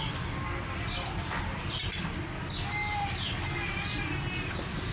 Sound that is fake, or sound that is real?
real